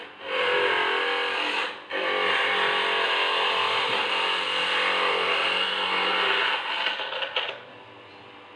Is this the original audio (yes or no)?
yes